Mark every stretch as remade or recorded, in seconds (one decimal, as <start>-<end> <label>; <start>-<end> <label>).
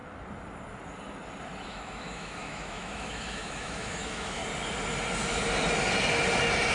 0.0-1.7 recorded; 1.7-4.4 remade; 4.4-6.7 recorded